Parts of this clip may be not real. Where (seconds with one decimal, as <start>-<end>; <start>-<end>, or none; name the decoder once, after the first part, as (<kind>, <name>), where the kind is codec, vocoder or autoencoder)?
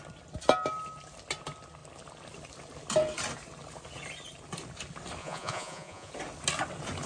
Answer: 5.2-6.1 (vocoder, Vocos)